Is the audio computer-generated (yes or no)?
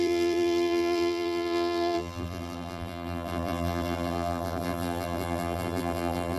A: yes